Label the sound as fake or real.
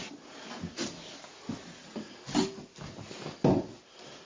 real